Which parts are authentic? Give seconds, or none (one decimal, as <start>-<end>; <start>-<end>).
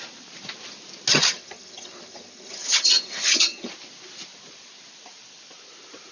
0.0-1.1; 3.7-6.1